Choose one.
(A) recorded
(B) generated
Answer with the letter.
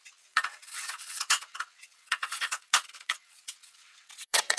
B